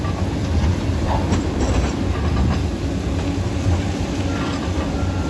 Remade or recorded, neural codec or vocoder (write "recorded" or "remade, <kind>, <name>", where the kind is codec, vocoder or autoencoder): recorded